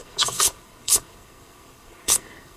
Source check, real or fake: fake